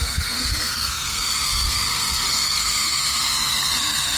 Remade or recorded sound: remade